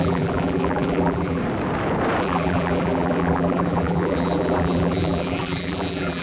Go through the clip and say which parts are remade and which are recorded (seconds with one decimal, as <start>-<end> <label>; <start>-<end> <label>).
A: 0.0-1.4 remade; 1.4-2.2 recorded; 2.2-6.2 remade